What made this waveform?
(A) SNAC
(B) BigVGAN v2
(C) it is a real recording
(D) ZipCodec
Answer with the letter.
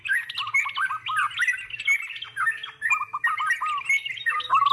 C